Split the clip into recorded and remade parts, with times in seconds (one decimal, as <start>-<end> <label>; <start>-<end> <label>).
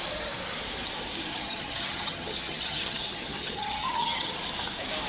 0.0-1.3 recorded; 1.3-4.4 remade; 4.4-5.1 recorded